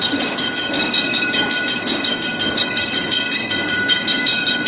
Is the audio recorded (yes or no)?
no